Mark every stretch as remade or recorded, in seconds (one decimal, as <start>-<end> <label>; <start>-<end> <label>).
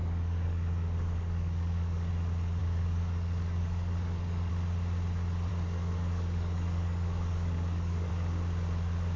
0.0-2.1 remade; 2.1-2.6 recorded; 2.6-4.5 remade; 4.5-5.5 recorded; 5.5-8.1 remade; 8.1-9.2 recorded